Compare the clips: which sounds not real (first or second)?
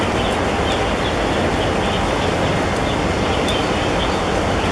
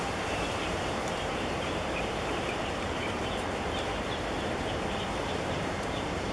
second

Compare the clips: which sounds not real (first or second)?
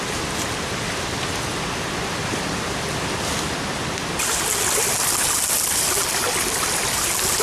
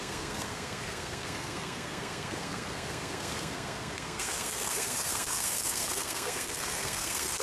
second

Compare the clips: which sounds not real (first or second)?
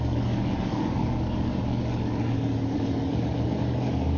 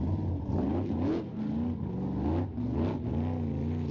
first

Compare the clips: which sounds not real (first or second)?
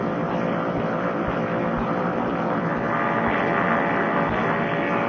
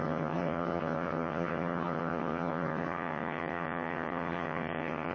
second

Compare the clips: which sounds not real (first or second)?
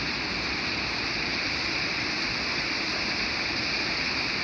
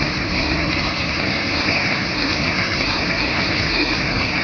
second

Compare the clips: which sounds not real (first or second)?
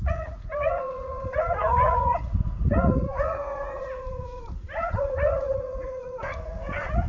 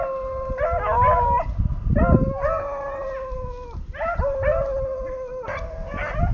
first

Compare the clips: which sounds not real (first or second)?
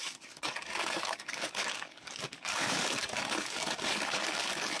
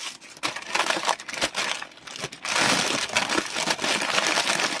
first